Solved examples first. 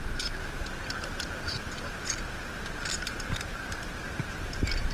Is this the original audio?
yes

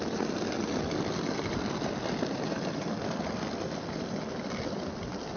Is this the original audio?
yes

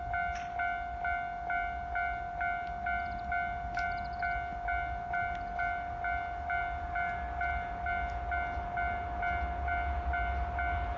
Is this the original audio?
yes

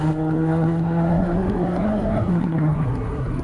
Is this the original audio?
no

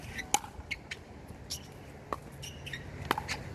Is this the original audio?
yes